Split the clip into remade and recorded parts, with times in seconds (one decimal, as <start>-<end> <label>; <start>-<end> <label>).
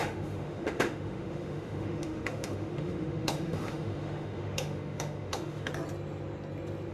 0.0-5.7 remade; 5.7-6.9 recorded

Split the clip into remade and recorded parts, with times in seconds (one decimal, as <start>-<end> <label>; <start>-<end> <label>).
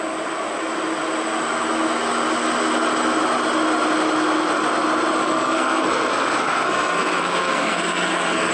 0.0-5.2 recorded; 5.2-8.5 remade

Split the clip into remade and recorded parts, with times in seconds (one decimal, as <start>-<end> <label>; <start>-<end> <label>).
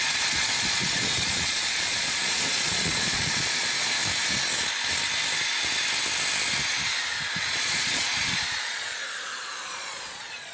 0.0-4.0 remade; 4.0-7.4 recorded; 7.4-10.5 remade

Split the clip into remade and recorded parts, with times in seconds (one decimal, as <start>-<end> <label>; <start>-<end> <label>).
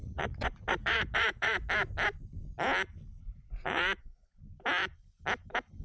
0.0-1.7 remade; 1.7-3.3 recorded; 3.3-4.3 remade; 4.3-5.8 recorded